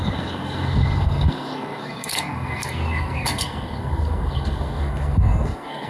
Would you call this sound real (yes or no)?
no